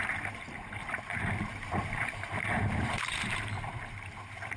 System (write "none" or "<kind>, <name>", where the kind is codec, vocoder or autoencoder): vocoder, BigVGAN v2